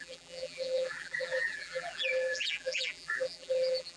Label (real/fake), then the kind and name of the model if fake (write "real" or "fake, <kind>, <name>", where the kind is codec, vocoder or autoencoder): fake, vocoder, BigVGAN v2